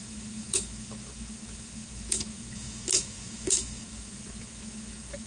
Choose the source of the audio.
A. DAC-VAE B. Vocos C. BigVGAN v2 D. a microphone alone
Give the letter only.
A